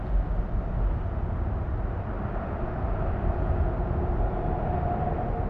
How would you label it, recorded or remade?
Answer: recorded